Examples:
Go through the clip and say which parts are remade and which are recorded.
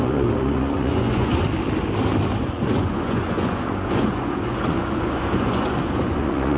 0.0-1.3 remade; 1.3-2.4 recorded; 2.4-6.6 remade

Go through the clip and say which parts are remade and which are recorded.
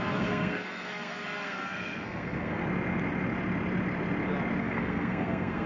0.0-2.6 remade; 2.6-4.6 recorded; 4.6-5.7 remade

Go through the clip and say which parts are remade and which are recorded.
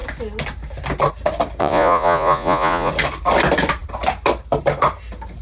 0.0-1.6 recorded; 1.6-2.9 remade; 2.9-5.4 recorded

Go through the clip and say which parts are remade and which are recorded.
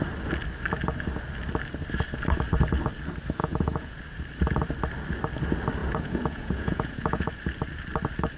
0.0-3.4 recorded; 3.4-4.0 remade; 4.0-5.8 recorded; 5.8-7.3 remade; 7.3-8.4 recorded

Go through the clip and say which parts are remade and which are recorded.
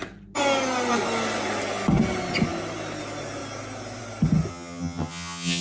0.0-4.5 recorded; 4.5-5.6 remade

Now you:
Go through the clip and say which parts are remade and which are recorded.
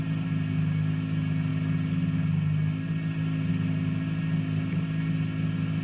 0.0-5.8 recorded